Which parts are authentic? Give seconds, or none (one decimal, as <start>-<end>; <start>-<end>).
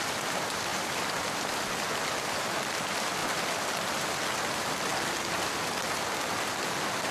0.0-0.7; 1.8-3.2; 3.9-7.1